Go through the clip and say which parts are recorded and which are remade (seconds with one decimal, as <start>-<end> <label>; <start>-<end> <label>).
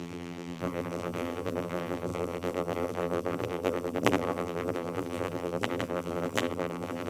0.0-7.1 remade